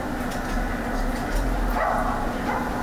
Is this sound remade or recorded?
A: recorded